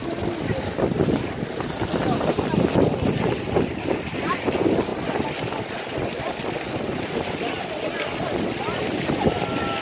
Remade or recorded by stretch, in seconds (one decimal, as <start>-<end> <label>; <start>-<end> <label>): 0.0-9.8 recorded